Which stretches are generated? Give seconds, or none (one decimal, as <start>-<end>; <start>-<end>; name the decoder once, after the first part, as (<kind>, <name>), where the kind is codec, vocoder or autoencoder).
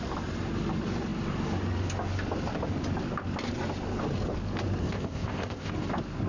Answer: 4.8-5.7 (codec, ZipCodec)